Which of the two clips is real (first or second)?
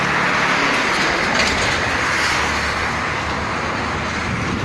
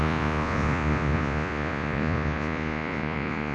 first